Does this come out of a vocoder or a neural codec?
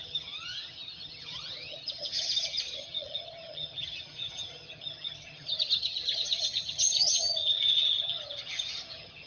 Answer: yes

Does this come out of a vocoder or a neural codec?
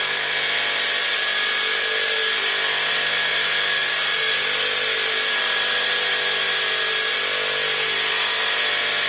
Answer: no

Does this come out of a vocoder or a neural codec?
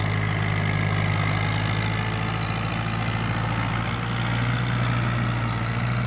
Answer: no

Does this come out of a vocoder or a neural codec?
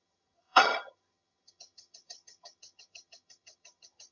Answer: yes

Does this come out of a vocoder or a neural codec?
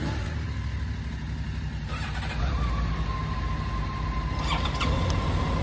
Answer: no